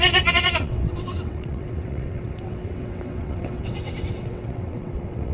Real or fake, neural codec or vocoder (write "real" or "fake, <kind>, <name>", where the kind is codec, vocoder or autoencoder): fake, vocoder, WaveNeXt